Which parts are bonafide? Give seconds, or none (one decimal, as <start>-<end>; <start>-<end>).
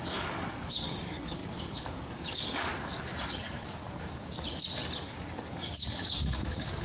2.7-5.5